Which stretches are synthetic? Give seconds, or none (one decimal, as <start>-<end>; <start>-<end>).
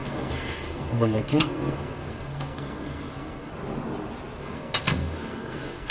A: 0.0-3.5; 4.4-5.9